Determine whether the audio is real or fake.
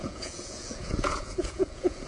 fake